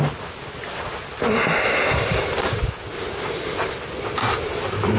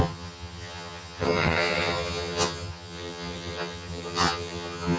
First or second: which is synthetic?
second